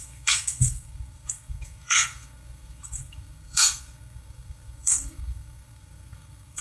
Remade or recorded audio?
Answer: remade